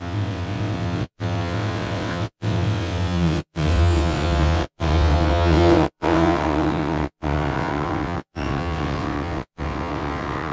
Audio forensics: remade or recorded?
remade